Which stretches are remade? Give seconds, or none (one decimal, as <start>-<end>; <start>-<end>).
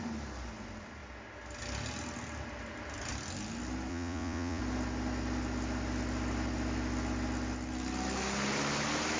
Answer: 3.9-4.6